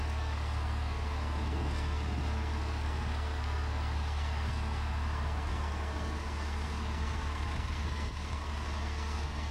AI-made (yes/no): yes